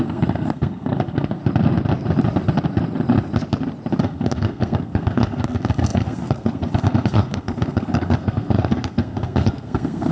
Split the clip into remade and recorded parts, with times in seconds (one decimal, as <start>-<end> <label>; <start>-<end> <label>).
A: 0.0-1.4 remade; 1.4-4.0 recorded; 4.0-10.1 remade